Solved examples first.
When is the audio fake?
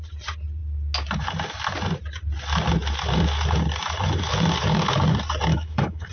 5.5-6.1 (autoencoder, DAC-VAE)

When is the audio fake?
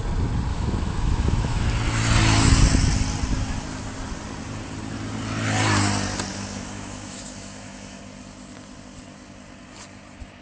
0.5-1.6 (autoencoder, DAC-VAE); 6.3-8.0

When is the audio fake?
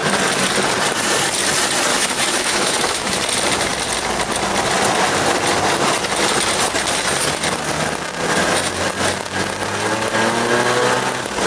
1.9-3.2 (autoencoder, DAC-VAE)